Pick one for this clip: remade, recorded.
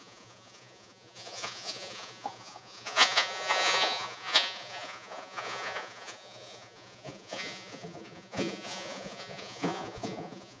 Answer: remade